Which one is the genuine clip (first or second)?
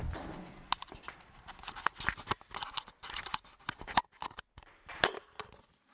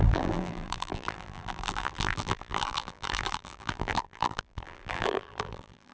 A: first